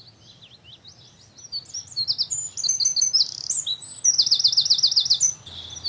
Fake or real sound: real